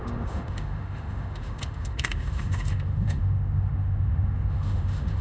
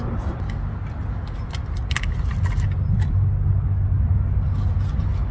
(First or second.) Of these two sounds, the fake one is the first